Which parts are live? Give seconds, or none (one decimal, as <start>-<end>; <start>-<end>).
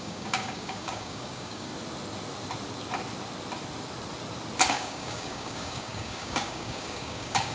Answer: 1.7-4.7